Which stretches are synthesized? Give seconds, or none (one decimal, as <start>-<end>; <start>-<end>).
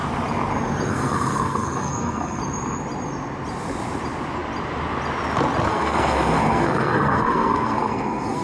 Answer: 0.9-2.4; 5.7-8.4